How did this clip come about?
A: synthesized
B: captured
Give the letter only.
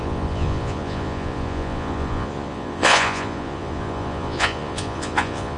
A